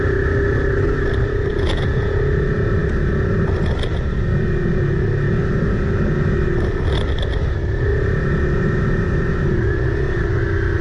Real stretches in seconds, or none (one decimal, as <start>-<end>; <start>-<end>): 0.0-1.5; 2.1-10.8